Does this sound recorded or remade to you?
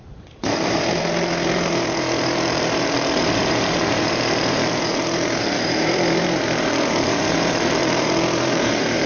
remade